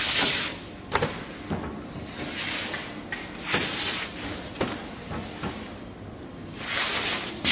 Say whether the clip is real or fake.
real